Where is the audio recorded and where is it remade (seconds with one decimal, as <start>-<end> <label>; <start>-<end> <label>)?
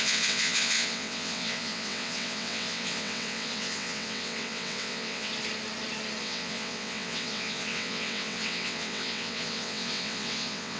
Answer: 0.0-5.3 remade; 5.3-6.2 recorded; 6.2-10.8 remade